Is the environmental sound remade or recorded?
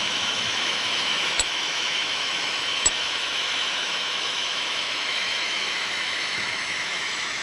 remade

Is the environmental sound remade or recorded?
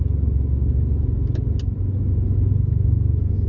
recorded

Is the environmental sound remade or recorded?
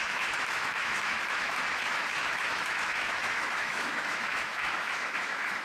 remade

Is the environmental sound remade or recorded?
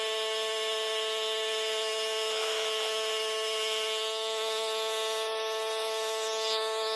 remade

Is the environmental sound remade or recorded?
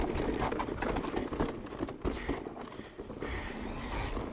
recorded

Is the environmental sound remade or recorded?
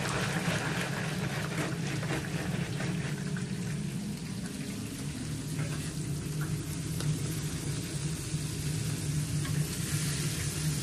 recorded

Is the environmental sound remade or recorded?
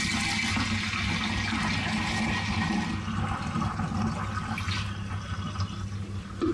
recorded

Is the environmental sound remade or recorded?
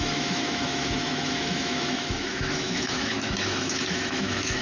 remade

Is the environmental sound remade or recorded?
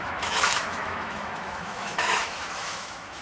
remade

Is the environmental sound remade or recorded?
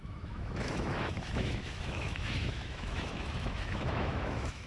remade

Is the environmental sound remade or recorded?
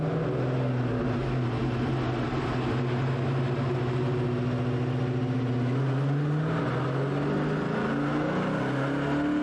recorded